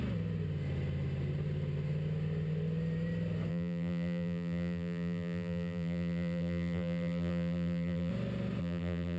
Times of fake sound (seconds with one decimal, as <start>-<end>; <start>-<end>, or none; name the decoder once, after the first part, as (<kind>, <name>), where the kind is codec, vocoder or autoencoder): 3.5-8.1 (vocoder, BigVGAN v2); 8.6-9.2